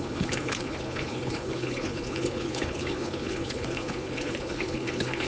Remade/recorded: remade